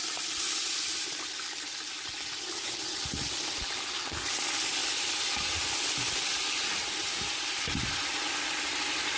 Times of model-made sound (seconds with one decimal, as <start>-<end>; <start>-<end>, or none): 1.9-2.7; 4.8-8.6